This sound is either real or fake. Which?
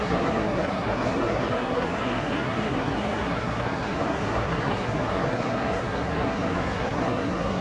fake